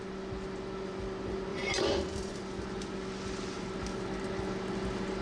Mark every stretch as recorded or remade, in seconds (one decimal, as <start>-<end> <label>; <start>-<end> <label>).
0.0-1.5 recorded; 1.5-2.4 remade; 2.4-5.2 recorded